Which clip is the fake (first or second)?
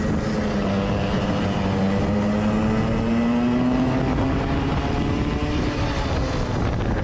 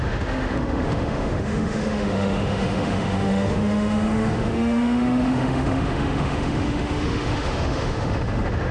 second